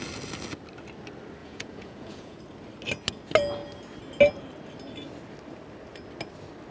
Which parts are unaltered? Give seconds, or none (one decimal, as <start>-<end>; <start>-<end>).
0.0-1.4; 2.4-6.7